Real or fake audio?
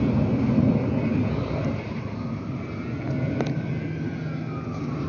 real